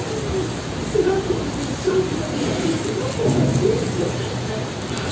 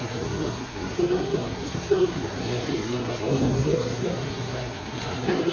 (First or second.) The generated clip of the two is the second